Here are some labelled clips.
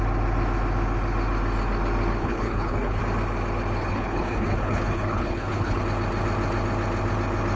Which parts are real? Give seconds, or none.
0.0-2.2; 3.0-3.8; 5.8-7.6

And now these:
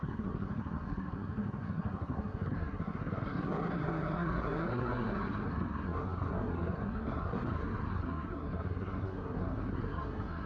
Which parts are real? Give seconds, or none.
none